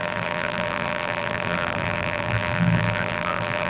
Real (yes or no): no